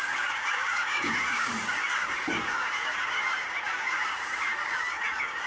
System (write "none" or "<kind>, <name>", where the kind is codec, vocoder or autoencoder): codec, DAC